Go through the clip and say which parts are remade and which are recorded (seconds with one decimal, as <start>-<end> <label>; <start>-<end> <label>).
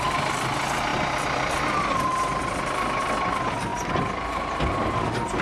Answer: 0.0-5.4 recorded